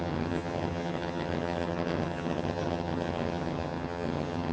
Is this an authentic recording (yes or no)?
no